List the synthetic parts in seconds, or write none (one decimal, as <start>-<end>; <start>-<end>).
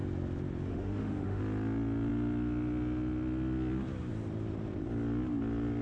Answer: 0.7-1.4